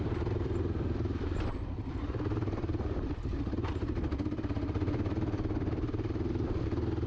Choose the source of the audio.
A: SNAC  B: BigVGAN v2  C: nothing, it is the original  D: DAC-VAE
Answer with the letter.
B